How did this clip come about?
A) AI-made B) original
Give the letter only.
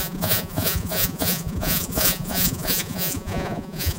A